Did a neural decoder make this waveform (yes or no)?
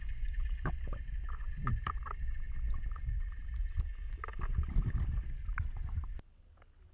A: no